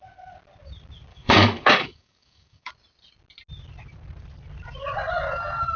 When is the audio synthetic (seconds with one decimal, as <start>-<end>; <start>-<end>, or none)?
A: 1.1-2.7